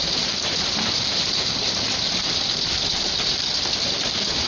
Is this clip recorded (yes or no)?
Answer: no